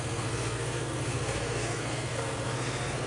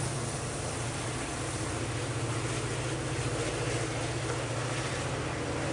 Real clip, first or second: second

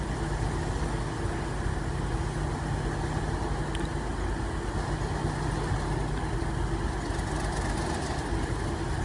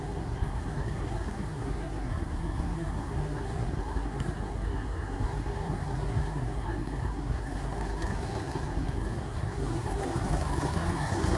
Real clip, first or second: first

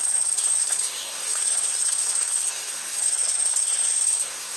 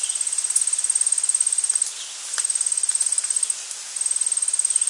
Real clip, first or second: second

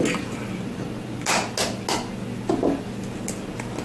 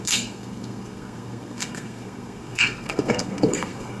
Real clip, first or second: first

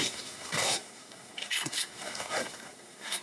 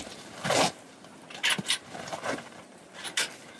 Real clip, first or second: second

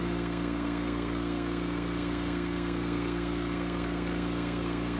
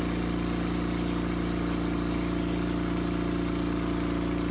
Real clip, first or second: second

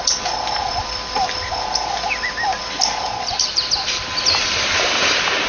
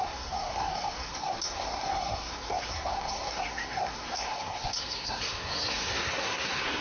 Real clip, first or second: first